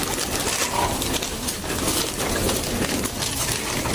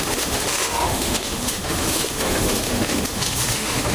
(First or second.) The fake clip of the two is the second